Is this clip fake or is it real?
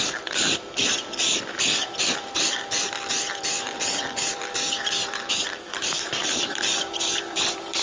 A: fake